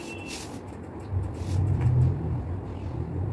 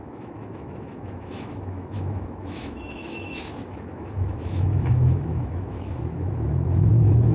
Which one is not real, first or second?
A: second